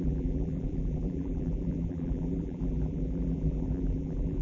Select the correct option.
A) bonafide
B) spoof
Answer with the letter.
B